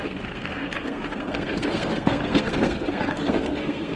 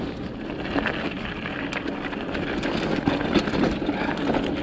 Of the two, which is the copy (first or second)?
first